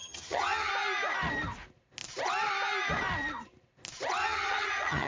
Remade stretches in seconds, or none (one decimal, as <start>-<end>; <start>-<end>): 0.0-0.7; 4.2-5.1